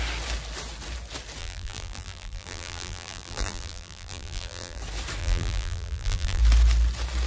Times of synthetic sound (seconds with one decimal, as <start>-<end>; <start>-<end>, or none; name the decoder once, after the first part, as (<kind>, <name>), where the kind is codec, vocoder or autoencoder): 1.4-4.8 (vocoder, BigVGAN v2); 5.2-6.4